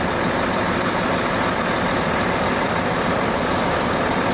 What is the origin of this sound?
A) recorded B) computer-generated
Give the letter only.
B